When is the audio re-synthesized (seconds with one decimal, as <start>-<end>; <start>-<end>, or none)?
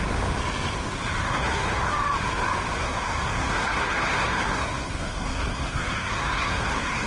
1.2-1.9; 2.8-7.1